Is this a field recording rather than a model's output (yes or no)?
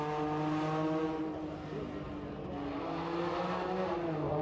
yes